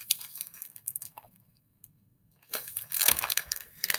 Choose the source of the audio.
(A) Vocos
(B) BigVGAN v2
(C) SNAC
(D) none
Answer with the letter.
C